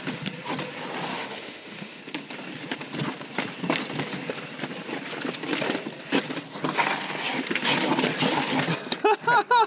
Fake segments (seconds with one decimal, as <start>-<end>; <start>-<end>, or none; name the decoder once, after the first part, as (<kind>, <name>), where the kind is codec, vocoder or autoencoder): 1.1-2.0 (autoencoder, DAC-VAE)